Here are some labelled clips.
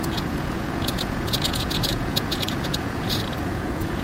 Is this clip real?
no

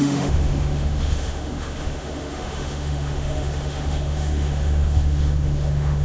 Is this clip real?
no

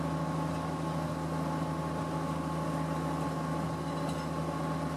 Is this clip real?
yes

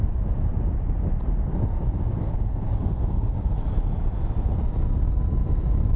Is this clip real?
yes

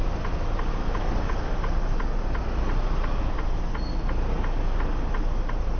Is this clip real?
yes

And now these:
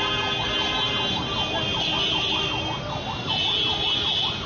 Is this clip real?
yes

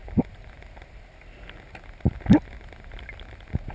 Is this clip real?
yes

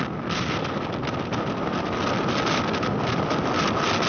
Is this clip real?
yes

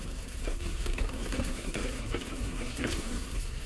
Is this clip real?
no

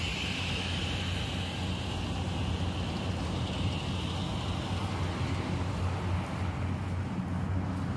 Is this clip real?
yes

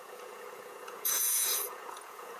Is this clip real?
no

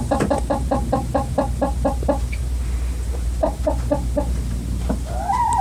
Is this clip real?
no